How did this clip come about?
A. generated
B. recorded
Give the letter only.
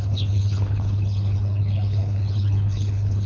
A